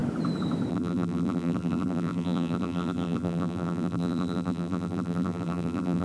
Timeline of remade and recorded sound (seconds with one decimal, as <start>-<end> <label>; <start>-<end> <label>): 0.0-0.7 recorded; 0.7-6.0 remade